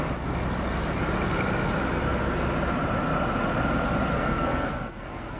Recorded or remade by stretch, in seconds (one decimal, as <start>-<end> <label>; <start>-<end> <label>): 0.0-4.1 recorded; 4.1-5.4 remade